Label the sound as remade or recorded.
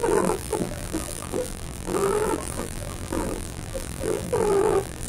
remade